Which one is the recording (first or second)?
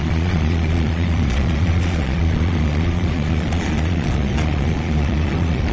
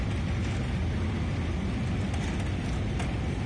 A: second